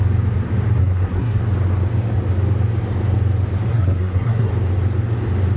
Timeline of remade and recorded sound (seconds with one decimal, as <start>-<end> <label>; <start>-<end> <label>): 0.0-0.8 recorded; 0.8-1.4 remade; 1.4-3.7 recorded; 3.7-4.5 remade; 4.5-5.6 recorded